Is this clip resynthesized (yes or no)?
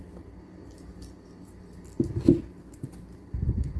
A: no